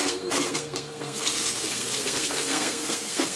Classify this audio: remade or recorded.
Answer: remade